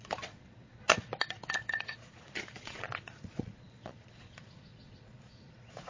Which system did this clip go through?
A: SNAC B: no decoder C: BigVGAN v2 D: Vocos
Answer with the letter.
D